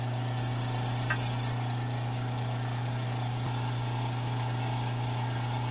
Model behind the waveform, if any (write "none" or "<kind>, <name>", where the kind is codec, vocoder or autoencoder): none